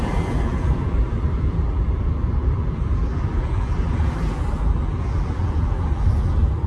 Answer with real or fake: fake